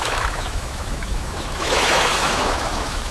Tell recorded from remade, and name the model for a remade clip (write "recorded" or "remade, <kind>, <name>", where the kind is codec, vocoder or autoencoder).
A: remade, autoencoder, DAC-VAE